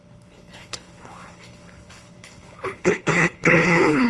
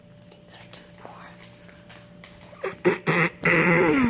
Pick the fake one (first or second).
first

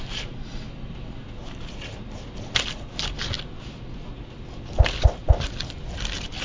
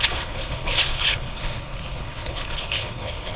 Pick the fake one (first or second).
second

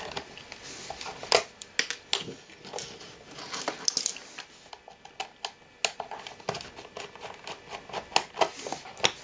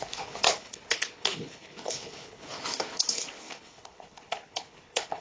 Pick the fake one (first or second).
second